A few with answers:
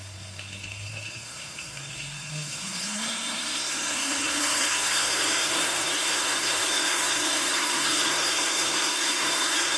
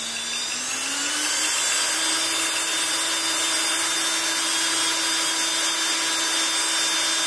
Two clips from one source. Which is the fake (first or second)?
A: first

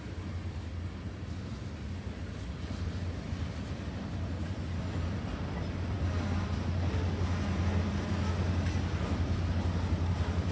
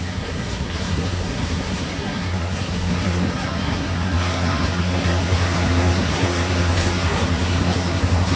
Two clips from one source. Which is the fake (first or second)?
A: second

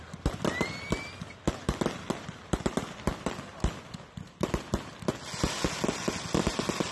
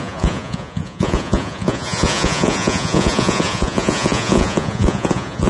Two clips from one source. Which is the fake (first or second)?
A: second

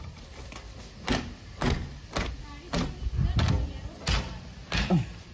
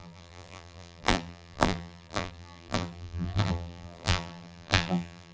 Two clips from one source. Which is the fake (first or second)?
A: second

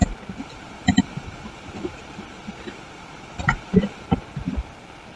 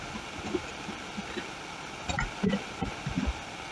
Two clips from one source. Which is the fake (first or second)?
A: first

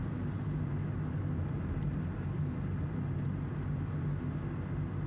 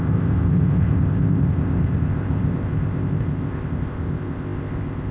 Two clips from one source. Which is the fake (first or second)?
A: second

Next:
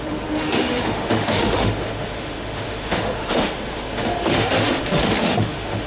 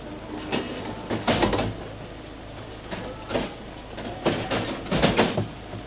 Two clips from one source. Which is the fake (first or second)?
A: first